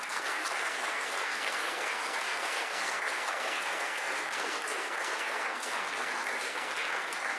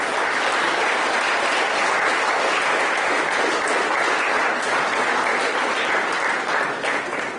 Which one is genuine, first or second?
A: second